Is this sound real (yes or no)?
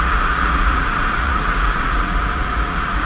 no